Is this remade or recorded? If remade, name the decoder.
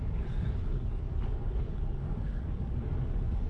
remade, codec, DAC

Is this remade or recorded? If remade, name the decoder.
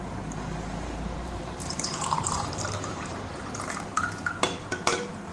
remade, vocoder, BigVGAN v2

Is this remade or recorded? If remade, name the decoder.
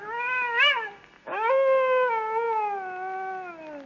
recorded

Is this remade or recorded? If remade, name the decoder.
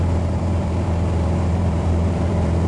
remade, vocoder, BigVGAN v2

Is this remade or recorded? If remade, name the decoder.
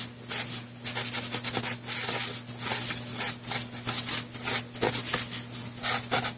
recorded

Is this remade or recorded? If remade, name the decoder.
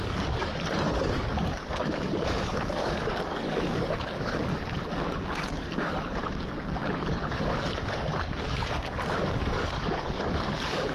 remade, codec, DAC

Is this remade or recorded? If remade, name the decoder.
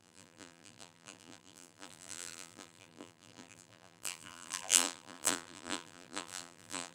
remade, vocoder, BigVGAN v2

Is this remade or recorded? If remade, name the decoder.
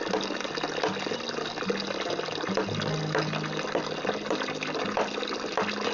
recorded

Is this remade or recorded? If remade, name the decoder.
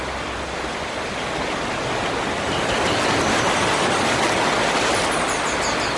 recorded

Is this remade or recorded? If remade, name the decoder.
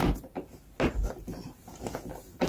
recorded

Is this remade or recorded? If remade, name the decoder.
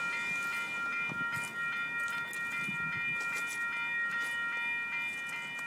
recorded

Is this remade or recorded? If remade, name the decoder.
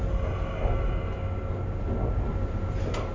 recorded